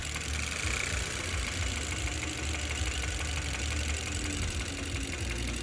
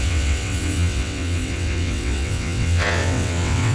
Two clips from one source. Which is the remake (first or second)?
second